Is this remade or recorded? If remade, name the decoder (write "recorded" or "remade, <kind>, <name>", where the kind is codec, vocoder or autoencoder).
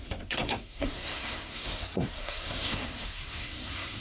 remade, codec, SNAC